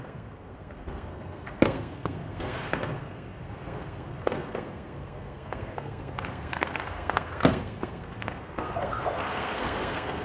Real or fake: fake